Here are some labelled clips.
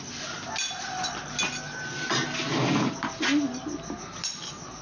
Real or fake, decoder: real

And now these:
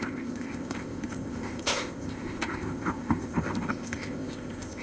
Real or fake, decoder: fake, codec, ZipCodec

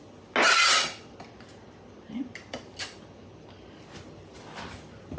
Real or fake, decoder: real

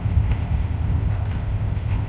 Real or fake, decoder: fake, codec, ZipCodec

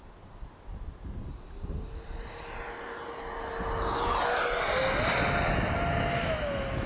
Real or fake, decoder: real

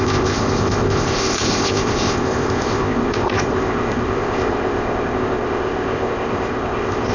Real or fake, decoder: fake, codec, ZipCodec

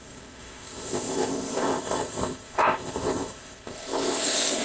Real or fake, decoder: fake, codec, ZipCodec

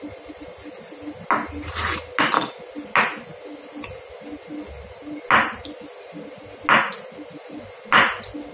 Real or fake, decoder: real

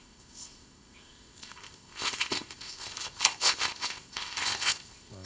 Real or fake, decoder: fake, codec, ZipCodec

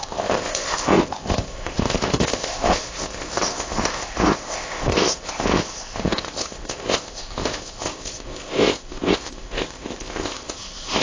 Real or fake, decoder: fake, codec, ZipCodec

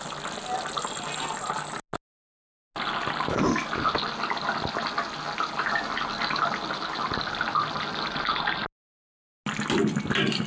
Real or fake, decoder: real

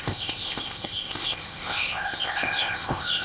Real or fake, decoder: fake, codec, ZipCodec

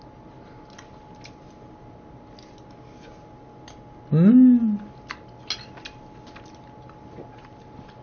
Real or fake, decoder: real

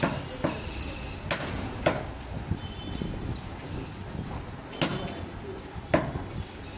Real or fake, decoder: real